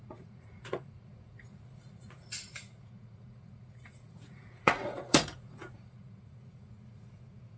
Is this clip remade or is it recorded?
remade